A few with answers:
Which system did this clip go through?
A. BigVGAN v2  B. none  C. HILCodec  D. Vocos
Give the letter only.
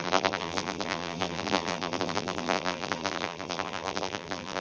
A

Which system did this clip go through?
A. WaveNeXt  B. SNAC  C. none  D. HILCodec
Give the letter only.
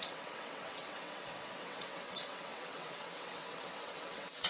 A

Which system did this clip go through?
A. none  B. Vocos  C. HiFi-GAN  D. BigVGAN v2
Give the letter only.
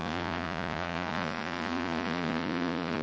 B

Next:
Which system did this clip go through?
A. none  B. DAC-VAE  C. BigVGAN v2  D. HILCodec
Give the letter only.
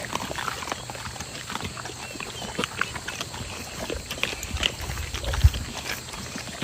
A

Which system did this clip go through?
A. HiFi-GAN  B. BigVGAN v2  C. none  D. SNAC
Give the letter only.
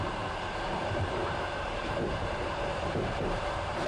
B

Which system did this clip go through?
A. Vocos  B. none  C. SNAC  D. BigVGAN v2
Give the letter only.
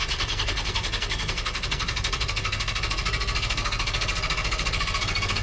C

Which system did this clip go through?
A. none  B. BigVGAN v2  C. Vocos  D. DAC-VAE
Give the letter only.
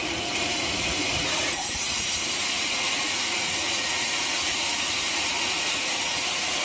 C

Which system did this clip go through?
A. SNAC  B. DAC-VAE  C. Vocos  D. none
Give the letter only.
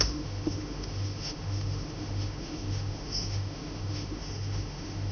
B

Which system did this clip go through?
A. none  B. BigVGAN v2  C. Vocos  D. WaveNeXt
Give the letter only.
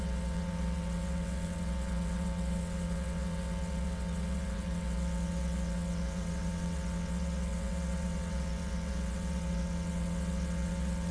D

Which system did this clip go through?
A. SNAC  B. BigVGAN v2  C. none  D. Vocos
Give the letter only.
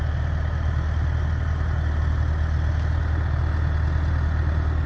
C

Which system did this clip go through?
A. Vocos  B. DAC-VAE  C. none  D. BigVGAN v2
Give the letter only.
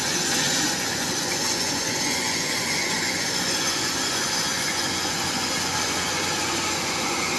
A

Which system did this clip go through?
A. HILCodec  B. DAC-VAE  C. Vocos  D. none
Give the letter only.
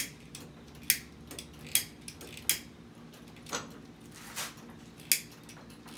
D